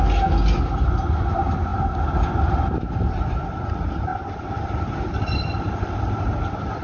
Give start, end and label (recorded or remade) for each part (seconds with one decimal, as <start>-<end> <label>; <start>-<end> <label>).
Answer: 0.0-6.8 recorded